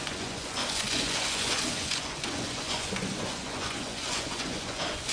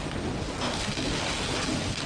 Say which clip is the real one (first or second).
second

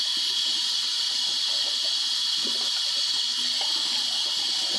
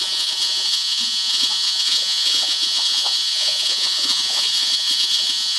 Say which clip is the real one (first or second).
first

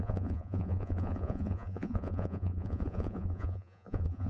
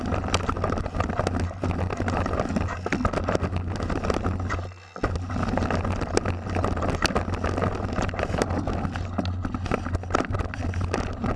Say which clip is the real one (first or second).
second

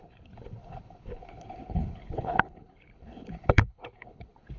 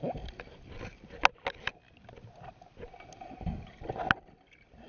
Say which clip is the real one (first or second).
second